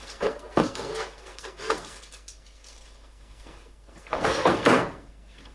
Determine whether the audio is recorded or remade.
remade